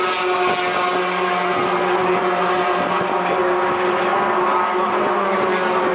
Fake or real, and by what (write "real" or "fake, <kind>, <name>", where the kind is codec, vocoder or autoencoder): real